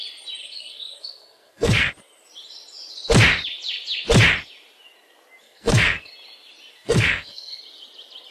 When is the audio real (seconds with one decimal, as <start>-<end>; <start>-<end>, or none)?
0.0-0.4; 1.9-5.4; 6.1-6.7; 7.6-8.3